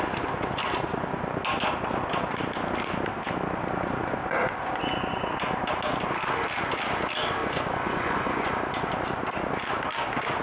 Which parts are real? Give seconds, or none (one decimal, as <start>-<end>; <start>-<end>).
0.0-4.2; 4.8-7.4; 8.5-10.4